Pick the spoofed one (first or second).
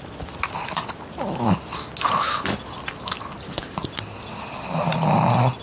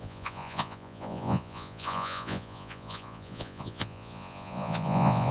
second